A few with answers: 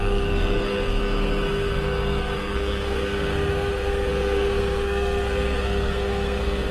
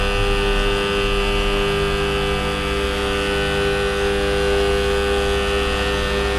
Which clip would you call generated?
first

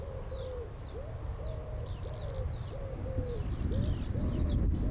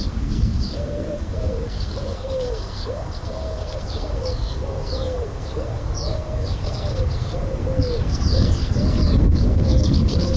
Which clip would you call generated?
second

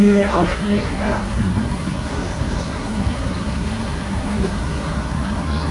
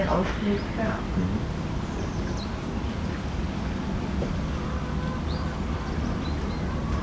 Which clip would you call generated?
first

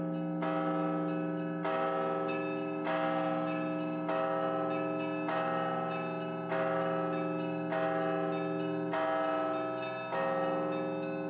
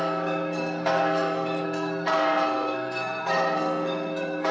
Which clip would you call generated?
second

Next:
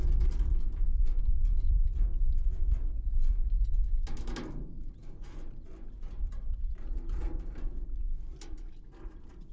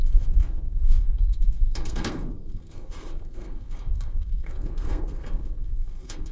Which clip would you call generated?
second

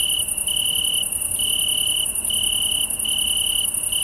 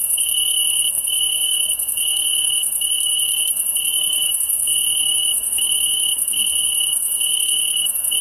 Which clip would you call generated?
second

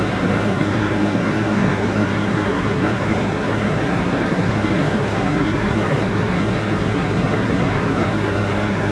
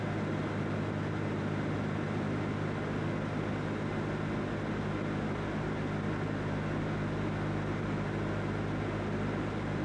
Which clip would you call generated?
first